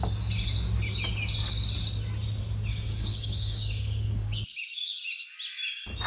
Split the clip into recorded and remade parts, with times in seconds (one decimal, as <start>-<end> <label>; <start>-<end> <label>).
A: 0.0-2.7 recorded; 2.7-5.0 remade; 5.0-6.1 recorded